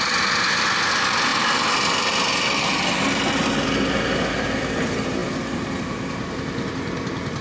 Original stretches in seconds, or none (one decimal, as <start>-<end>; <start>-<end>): 0.0-7.4